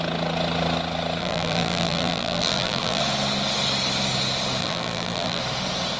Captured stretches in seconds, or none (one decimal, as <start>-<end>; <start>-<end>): 0.0-1.2; 3.0-4.6; 5.4-6.0